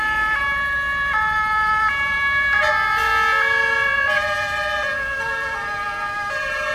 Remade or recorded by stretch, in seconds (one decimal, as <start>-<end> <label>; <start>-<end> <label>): 0.0-3.1 remade; 3.1-5.2 recorded; 5.2-6.7 remade